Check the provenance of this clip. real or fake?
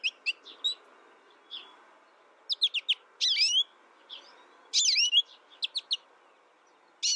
real